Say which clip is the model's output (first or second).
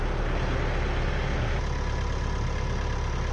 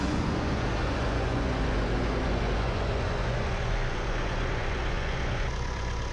second